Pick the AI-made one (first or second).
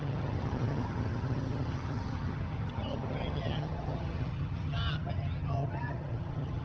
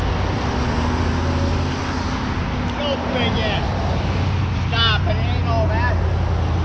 first